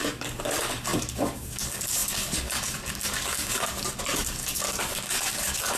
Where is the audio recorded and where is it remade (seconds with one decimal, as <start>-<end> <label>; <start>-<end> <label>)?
0.0-5.8 remade